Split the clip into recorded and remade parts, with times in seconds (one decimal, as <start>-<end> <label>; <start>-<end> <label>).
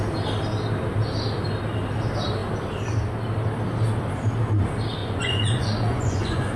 0.0-5.0 recorded; 5.0-6.6 remade